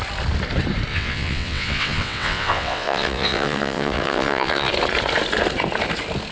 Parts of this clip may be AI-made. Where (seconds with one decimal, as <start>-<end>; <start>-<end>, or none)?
0.9-4.7